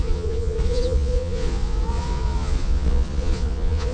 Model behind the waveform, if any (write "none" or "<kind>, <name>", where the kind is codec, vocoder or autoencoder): vocoder, Vocos